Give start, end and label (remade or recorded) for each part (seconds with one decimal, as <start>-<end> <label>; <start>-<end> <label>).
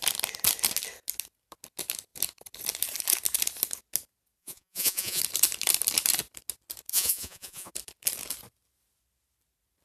0.0-4.4 recorded; 4.4-5.2 remade; 5.2-6.9 recorded; 6.9-7.7 remade; 7.7-9.8 recorded